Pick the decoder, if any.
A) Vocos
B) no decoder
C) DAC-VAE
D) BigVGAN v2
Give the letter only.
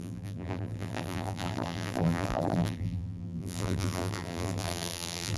D